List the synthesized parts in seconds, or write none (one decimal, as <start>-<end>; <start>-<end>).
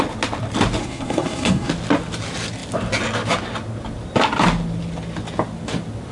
0.8-1.7